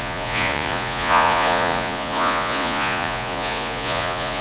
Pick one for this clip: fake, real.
fake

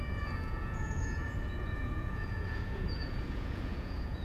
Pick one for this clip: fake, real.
fake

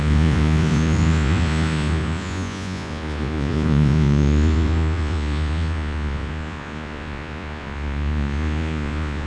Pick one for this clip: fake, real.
fake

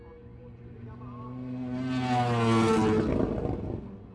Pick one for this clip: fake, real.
real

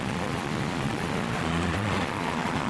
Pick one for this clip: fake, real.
fake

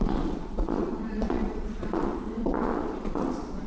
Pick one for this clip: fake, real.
fake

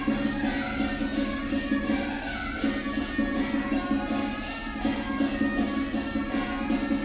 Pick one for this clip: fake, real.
real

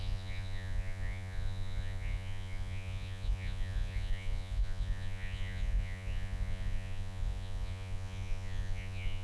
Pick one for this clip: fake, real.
fake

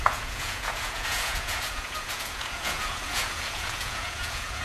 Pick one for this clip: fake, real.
fake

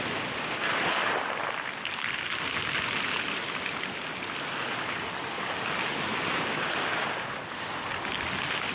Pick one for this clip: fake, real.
real